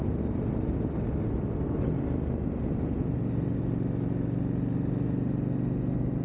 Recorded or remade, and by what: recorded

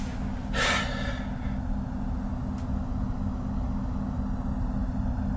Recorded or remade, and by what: recorded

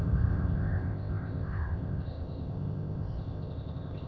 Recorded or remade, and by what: remade, codec, ZipCodec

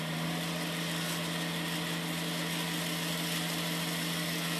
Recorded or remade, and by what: recorded